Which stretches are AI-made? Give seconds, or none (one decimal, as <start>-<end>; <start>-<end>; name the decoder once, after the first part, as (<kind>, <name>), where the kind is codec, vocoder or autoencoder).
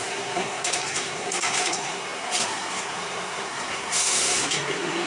0.0-5.1 (codec, SNAC)